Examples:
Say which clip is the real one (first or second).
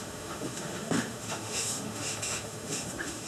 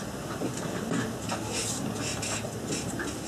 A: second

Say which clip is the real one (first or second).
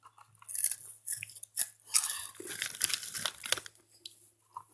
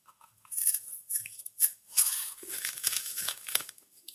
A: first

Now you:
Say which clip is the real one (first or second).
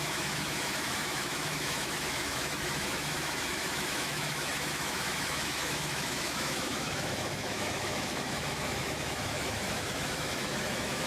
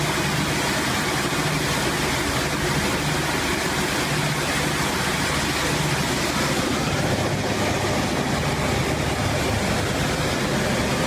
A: second